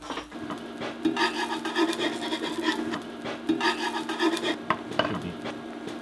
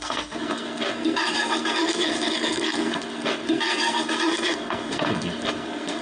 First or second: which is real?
first